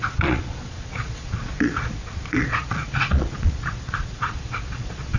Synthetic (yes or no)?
yes